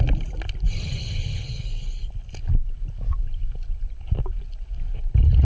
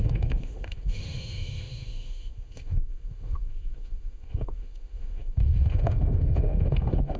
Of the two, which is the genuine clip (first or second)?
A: first